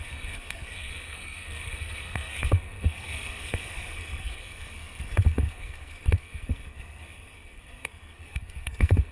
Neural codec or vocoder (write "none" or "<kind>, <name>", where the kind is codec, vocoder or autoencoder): codec, SNAC